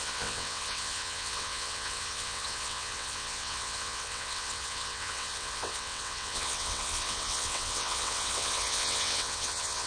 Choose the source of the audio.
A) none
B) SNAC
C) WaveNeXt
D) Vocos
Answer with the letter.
C